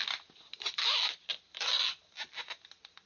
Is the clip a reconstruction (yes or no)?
no